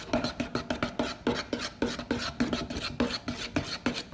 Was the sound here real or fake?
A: real